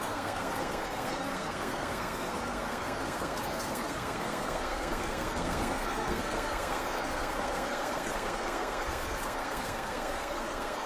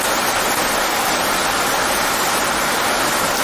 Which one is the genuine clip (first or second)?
second